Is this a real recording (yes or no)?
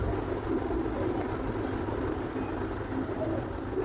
yes